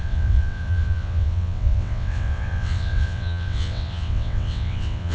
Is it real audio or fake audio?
fake